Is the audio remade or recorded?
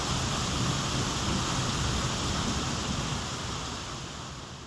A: recorded